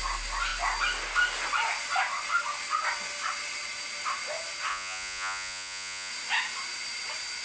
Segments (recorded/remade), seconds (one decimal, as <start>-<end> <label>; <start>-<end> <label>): 0.0-4.7 recorded; 4.7-6.1 remade; 6.1-7.4 recorded